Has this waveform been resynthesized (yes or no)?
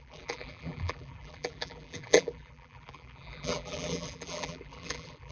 yes